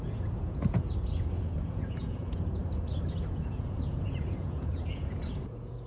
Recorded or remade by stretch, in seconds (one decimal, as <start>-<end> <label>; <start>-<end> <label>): 0.0-2.6 remade; 2.6-3.3 recorded; 3.3-5.9 remade